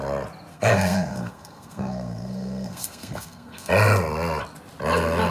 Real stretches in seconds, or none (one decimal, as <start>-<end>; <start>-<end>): 0.0-0.5; 3.7-5.3